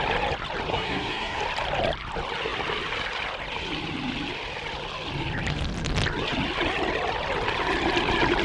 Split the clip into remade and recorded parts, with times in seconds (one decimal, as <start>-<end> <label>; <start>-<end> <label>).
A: 0.0-0.7 recorded; 0.7-1.4 remade; 1.4-8.4 recorded